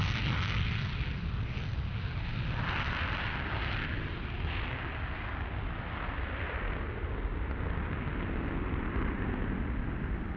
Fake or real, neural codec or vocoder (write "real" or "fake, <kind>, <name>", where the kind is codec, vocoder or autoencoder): real